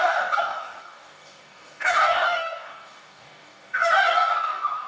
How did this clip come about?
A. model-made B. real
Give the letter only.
A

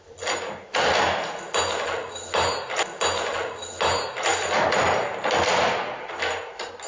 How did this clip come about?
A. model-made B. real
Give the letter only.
B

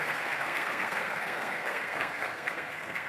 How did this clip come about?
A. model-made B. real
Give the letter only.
A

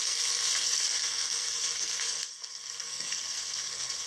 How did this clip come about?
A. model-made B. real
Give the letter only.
A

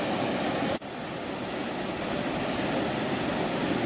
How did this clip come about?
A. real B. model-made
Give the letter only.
A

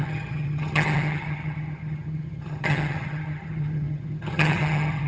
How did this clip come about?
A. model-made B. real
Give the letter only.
A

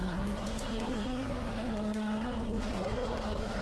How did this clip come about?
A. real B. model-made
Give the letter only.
B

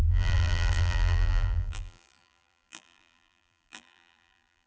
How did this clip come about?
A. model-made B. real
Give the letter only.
A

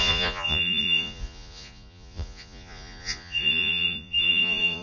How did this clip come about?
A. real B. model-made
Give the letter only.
B